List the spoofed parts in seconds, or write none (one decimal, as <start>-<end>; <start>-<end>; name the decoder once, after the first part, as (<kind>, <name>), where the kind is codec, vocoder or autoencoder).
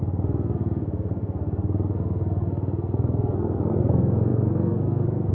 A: 0.0-5.3 (codec, SNAC)